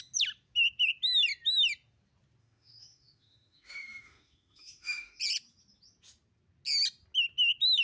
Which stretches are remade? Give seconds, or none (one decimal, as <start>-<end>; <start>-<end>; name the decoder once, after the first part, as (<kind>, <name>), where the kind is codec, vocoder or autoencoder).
2.4-5.2 (autoencoder, DAC-VAE)